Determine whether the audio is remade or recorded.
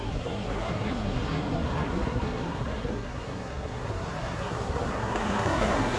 remade